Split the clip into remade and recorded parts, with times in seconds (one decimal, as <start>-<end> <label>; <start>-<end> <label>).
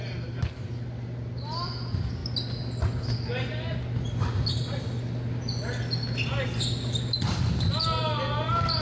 0.0-8.8 recorded